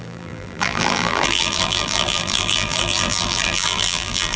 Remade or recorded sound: remade